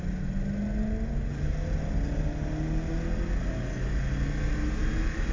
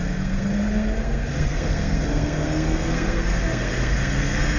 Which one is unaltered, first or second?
first